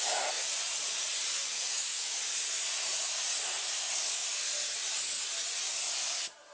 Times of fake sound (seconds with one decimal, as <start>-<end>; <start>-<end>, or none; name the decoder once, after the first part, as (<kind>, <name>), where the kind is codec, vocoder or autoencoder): 1.3-2.2 (autoencoder, DAC-VAE)